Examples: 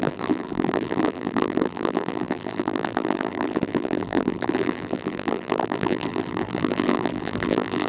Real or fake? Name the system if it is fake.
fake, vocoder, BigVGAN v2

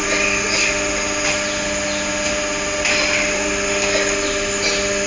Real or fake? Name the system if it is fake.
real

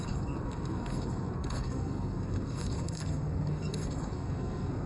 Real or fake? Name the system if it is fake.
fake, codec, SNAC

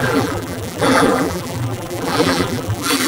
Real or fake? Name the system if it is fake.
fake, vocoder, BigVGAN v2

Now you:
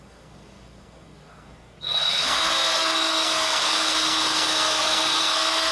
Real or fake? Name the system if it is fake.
fake, codec, SNAC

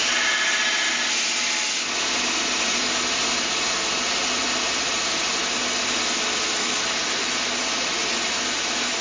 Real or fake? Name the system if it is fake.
real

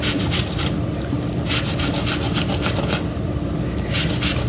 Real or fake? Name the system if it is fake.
real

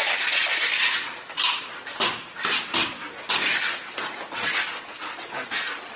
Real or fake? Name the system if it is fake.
real